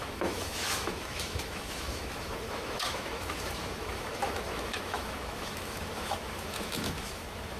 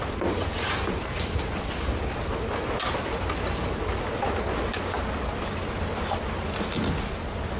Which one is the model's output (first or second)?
first